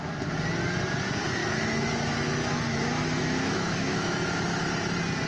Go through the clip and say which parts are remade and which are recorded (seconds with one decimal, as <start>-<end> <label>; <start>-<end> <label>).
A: 0.0-1.4 recorded; 1.4-4.6 remade; 4.6-5.3 recorded